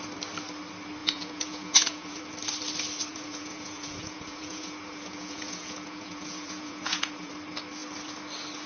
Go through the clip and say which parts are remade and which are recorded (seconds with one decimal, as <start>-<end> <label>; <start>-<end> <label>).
0.0-1.0 recorded; 1.0-2.2 remade; 2.2-3.1 recorded; 3.1-7.3 remade; 7.3-8.7 recorded